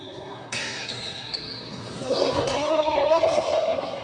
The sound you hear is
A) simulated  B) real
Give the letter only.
A